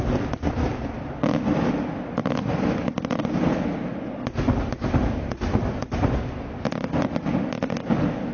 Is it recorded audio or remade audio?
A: recorded